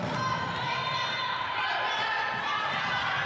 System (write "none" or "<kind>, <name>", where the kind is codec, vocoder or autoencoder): none